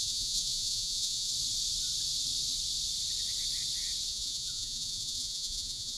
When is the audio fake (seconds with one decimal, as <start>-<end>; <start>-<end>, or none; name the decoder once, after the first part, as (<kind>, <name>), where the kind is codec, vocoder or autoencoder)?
0.0-1.3 (vocoder, Vocos); 4.1-6.0